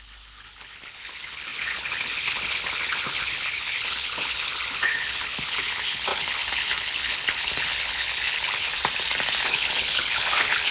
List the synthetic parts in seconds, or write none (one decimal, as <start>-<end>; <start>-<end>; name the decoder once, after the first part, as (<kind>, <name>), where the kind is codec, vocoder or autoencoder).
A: 0.0-8.7 (codec, HILCodec); 9.4-10.7